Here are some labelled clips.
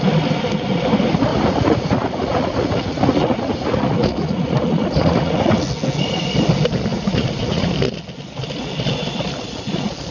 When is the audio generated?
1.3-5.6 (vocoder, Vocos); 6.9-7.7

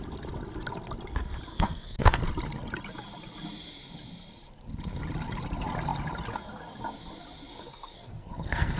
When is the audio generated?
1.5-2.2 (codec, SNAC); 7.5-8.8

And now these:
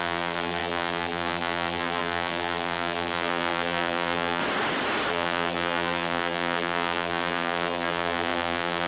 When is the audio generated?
0.0-4.4 (vocoder, BigVGAN v2); 5.1-8.9